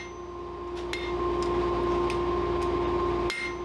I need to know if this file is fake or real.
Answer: real